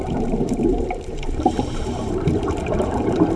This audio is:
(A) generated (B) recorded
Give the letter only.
A